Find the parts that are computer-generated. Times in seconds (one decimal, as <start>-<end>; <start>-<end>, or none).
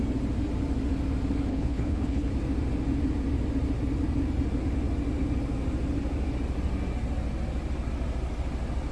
1.5-2.3